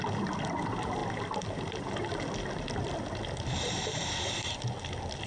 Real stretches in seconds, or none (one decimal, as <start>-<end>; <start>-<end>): 0.0-5.3